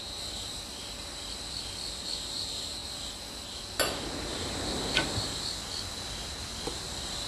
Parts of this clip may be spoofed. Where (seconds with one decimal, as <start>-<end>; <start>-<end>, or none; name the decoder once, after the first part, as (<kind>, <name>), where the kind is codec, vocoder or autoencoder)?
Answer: none